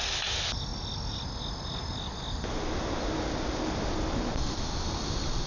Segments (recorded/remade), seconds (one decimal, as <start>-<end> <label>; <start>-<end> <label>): 0.0-5.5 recorded